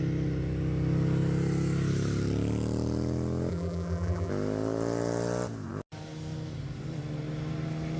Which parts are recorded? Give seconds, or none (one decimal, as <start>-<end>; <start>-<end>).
0.0-3.5; 4.3-8.0